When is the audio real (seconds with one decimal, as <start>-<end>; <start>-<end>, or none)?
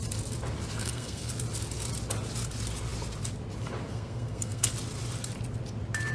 0.0-0.8; 1.3-3.9; 4.7-6.1